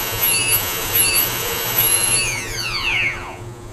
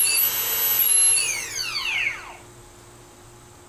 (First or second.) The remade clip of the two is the first